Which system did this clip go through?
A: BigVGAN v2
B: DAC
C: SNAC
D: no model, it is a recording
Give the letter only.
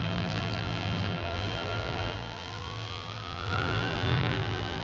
A